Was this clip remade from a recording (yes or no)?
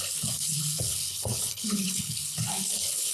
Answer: yes